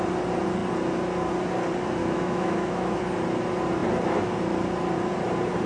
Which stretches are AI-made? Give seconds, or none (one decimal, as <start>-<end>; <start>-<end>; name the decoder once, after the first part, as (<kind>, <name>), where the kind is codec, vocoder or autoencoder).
2.0-3.0 (autoencoder, DAC-VAE)